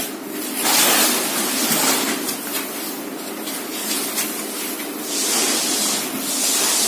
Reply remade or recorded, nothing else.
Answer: recorded